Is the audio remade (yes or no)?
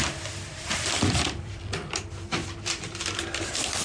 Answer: yes